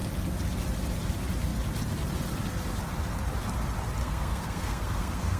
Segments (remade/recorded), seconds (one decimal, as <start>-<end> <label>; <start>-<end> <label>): 0.0-4.0 recorded; 4.0-5.4 remade